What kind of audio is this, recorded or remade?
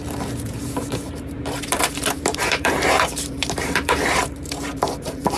remade